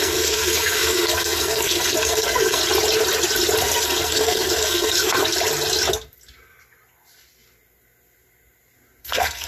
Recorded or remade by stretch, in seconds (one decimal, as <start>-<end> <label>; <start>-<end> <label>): 0.0-2.6 remade; 2.6-3.6 recorded; 3.6-5.2 remade; 5.2-9.0 recorded; 9.0-9.5 remade